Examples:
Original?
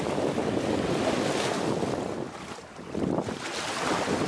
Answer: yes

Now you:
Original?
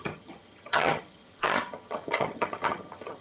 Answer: no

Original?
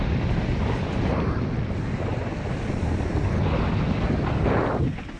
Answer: yes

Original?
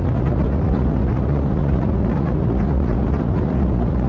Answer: no